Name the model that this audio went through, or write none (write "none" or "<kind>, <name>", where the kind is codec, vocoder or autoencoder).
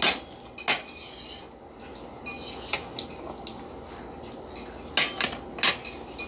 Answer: none